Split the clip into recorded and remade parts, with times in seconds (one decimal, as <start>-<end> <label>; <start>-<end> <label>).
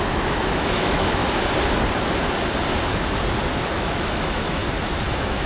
0.0-1.2 remade; 1.2-3.7 recorded; 3.7-4.6 remade; 4.6-5.1 recorded; 5.1-5.5 remade